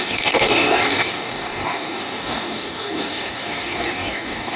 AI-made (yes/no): yes